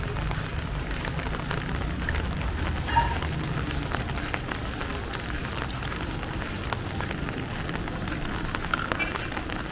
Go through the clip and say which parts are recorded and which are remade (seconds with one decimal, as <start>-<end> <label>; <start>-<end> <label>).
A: 0.0-0.5 recorded; 0.5-1.1 remade; 1.1-4.9 recorded; 4.9-5.5 remade; 5.5-9.7 recorded